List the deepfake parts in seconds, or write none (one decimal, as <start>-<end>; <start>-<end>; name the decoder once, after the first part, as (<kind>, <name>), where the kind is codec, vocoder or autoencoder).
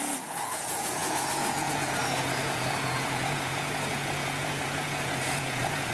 0.0-5.9 (vocoder, Vocos)